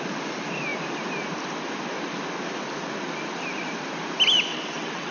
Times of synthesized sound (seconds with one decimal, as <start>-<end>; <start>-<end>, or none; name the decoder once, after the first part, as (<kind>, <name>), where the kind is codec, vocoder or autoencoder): 4.5-5.1 (vocoder, WaveNeXt)